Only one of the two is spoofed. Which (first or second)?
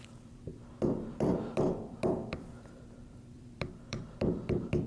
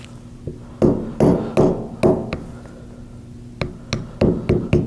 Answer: first